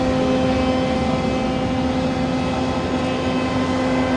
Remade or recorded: recorded